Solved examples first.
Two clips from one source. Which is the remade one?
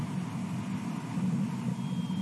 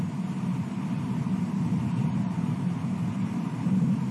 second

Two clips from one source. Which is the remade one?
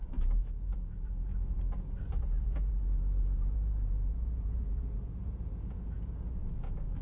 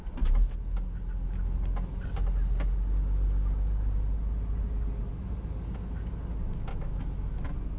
first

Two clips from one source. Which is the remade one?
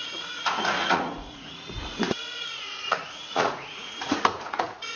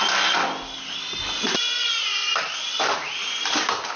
first